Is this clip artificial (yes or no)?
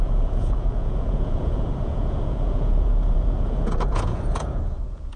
yes